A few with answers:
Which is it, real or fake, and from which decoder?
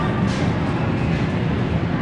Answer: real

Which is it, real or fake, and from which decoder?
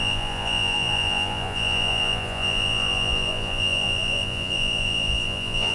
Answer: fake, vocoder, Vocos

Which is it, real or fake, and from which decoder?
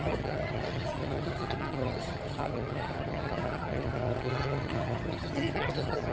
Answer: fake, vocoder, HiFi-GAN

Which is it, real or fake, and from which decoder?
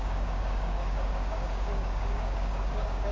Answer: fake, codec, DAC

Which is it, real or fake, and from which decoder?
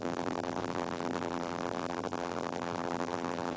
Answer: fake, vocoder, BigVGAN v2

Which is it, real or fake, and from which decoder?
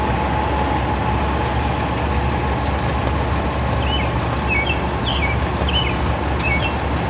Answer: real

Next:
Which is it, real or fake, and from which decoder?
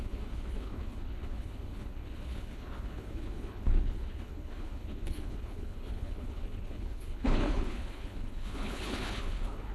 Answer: fake, codec, HILCodec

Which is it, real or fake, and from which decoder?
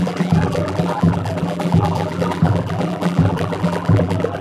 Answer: fake, vocoder, BigVGAN v2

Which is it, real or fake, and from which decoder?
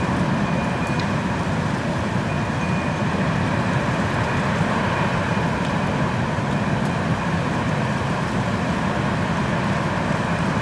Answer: real